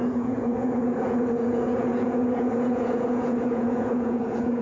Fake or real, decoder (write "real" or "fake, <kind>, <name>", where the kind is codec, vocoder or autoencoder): fake, vocoder, Vocos